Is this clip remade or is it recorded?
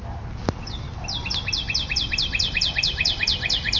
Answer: recorded